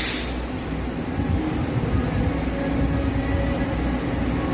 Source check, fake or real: real